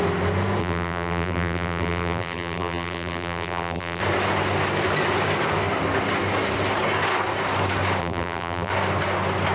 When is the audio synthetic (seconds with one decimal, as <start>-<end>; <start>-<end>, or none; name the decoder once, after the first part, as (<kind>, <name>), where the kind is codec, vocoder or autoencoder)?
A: 0.6-4.0 (vocoder, BigVGAN v2); 8.0-8.7